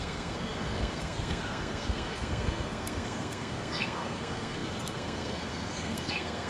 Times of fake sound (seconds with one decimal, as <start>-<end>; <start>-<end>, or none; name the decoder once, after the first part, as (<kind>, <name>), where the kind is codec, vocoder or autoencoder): 0.0-6.5 (codec, SNAC)